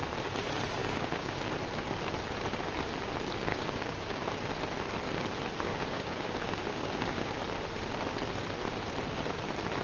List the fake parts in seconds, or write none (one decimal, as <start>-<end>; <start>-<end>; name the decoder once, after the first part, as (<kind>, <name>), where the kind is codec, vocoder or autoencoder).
0.8-1.5 (codec, DAC); 3.5-4.3; 5.7-7.4